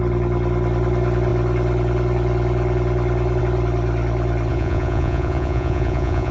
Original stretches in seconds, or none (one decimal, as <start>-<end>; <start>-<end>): 0.0-4.5